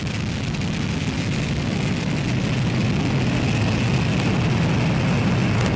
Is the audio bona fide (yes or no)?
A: yes